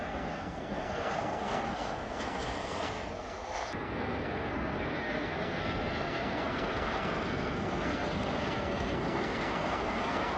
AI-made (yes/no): yes